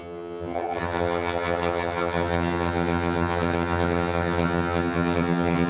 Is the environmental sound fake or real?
fake